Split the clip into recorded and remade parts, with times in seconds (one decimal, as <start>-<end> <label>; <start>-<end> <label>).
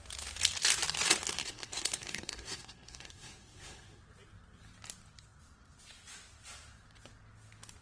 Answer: 0.0-1.4 recorded; 1.4-4.0 remade; 4.0-7.8 recorded